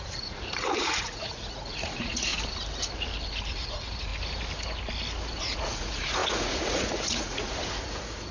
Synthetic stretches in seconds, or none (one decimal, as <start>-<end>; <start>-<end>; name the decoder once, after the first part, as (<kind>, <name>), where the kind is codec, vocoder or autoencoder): 0.0-2.3 (vocoder, Vocos); 3.5-4.1; 5.4-8.3